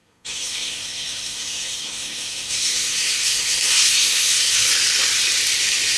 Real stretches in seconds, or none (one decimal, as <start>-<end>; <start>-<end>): 4.7-6.0